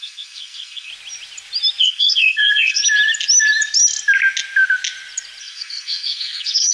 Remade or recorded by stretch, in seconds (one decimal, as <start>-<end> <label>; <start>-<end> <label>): 0.0-0.9 remade; 0.9-1.8 recorded; 1.8-2.8 remade; 2.8-5.4 recorded; 5.4-6.7 remade